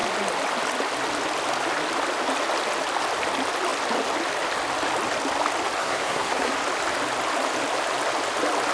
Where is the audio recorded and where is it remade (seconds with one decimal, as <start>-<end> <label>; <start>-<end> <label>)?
0.0-5.8 recorded; 5.8-6.5 remade; 6.5-8.7 recorded